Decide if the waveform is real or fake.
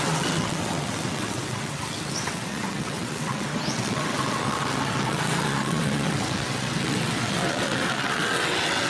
fake